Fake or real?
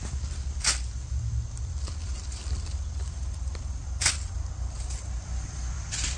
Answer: fake